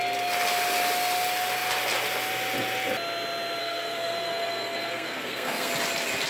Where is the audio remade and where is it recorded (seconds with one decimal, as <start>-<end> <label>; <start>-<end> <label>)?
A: 0.0-3.6 recorded; 3.6-5.7 remade; 5.7-6.3 recorded